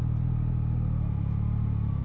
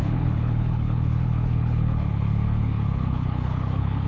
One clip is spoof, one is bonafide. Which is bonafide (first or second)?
first